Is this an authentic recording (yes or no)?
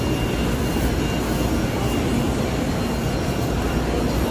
yes